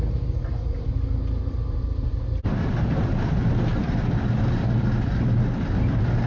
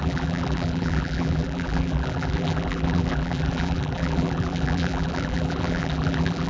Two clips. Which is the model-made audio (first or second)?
second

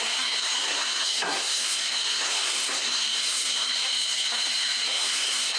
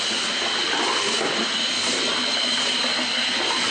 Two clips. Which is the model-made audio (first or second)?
first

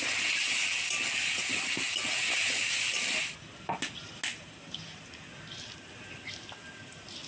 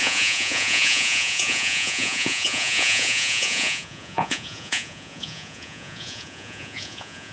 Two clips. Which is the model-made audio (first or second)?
second